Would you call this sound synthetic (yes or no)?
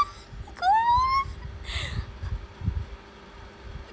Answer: no